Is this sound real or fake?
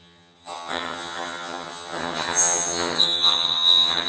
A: fake